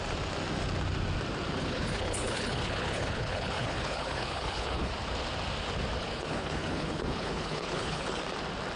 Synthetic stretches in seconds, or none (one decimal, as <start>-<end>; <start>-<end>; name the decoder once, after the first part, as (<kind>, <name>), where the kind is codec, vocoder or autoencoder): 1.6-4.9 (codec, HILCodec); 6.0-8.2